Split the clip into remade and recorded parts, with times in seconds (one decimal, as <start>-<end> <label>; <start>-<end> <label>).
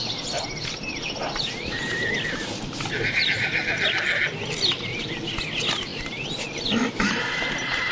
0.0-3.7 remade; 3.7-4.9 recorded; 4.9-5.4 remade; 5.4-7.9 recorded